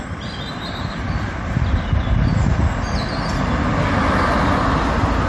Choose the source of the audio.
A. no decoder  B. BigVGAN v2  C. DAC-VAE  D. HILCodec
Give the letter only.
A